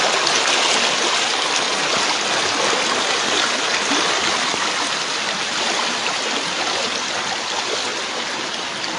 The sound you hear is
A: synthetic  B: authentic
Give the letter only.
B